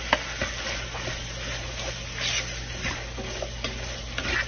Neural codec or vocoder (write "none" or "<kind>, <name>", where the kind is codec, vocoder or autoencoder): none